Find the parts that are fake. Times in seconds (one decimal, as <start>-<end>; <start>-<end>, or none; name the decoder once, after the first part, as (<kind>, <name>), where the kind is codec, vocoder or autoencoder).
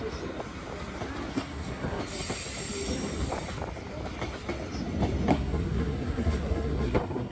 1.3-2.0 (codec, SNAC); 5.3-7.3